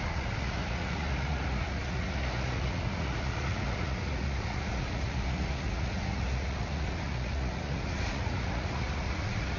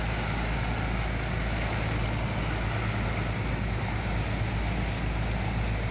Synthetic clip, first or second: first